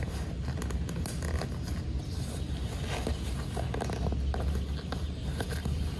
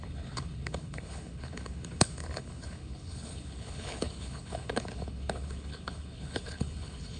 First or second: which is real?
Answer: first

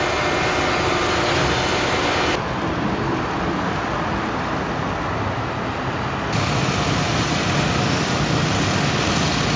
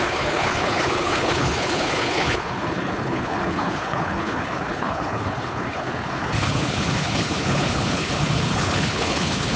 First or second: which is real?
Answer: first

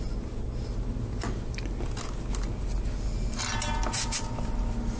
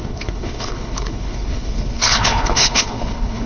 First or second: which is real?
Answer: first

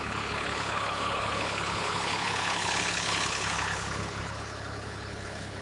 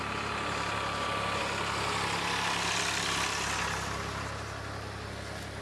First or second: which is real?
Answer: second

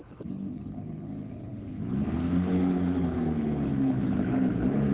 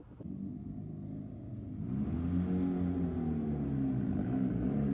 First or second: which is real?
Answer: second